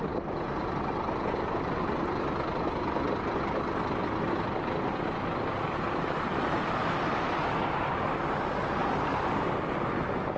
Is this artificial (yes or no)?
no